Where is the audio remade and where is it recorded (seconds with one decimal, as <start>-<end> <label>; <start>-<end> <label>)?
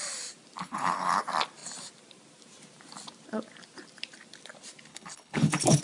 0.0-0.6 recorded; 0.6-1.2 remade; 1.2-4.9 recorded; 4.9-5.8 remade